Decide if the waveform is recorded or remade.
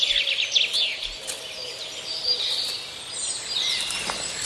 recorded